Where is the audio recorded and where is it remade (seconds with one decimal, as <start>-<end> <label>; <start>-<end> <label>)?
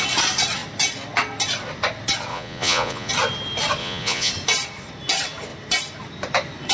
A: 0.0-2.3 recorded; 2.3-3.1 remade; 3.1-3.8 recorded; 3.8-4.3 remade; 4.3-6.7 recorded